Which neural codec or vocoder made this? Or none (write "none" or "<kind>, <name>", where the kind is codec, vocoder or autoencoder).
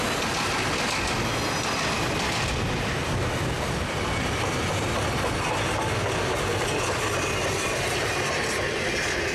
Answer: none